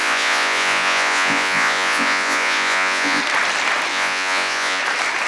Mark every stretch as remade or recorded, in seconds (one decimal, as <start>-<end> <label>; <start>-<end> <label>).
0.0-3.2 remade; 3.2-3.9 recorded; 3.9-4.8 remade; 4.8-5.3 recorded